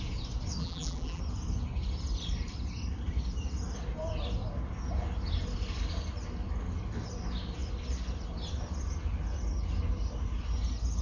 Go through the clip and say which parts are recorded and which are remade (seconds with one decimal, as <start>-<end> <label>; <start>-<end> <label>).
0.0-0.6 recorded; 0.6-1.2 remade; 1.2-11.0 recorded